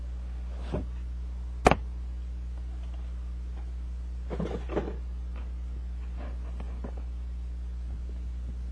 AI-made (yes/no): no